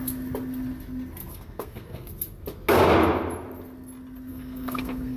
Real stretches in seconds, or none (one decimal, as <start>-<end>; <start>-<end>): 0.0-1.3; 2.1-4.3